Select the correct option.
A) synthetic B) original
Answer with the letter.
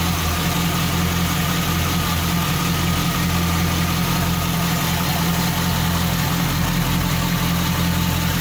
B